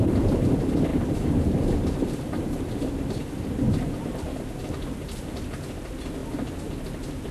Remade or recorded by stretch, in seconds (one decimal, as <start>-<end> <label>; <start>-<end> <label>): 0.0-0.9 recorded; 0.9-3.3 remade; 3.3-7.3 recorded